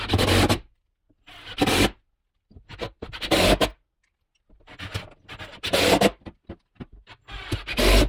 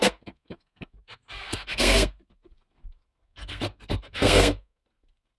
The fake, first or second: second